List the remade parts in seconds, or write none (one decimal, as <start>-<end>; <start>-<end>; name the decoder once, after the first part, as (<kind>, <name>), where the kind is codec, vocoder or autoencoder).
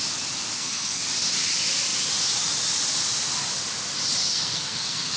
0.5-1.0 (codec, SNAC); 4.2-5.2